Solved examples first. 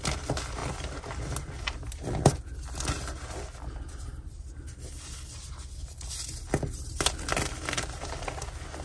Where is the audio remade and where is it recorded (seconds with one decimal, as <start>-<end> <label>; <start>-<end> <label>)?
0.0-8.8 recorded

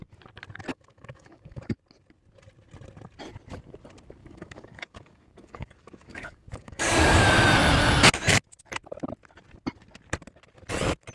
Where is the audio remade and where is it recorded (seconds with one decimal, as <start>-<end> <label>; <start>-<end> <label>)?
0.0-0.7 recorded; 0.7-1.8 remade; 1.8-4.2 recorded; 4.2-7.2 remade; 7.2-11.1 recorded

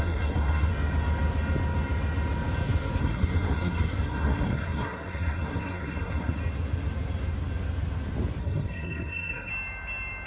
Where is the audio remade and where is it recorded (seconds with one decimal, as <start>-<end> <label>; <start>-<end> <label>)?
0.0-0.7 remade; 0.7-3.0 recorded; 3.0-6.4 remade; 6.4-8.4 recorded; 8.4-9.5 remade; 9.5-10.3 recorded

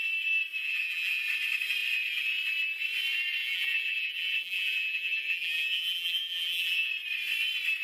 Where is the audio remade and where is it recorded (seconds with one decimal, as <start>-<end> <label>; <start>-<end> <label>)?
0.0-0.6 recorded; 0.6-1.2 remade; 1.2-3.4 recorded; 3.4-6.9 remade; 6.9-7.8 recorded

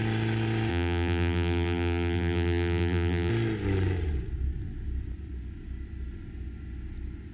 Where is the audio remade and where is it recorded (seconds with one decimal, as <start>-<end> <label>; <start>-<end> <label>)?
0.0-0.7 recorded; 0.7-3.3 remade; 3.3-7.3 recorded

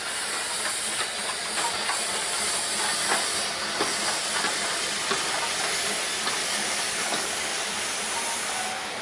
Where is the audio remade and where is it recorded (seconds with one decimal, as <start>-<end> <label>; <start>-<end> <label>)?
0.0-6.4 recorded; 6.4-7.8 remade; 7.8-9.0 recorded

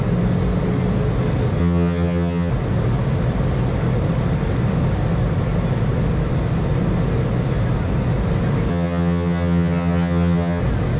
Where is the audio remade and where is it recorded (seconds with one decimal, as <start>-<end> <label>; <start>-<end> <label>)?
0.0-1.6 recorded; 1.6-2.5 remade; 2.5-8.7 recorded; 8.7-10.6 remade; 10.6-11.0 recorded